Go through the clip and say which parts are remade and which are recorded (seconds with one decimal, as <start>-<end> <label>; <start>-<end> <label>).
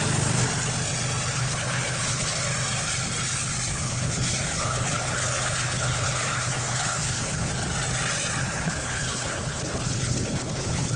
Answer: 0.0-1.3 recorded; 1.3-2.4 remade; 2.4-3.7 recorded; 3.7-7.5 remade; 7.5-8.4 recorded; 8.4-11.0 remade